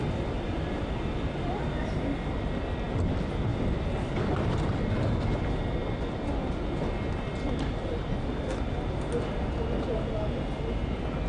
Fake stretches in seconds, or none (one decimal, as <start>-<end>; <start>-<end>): none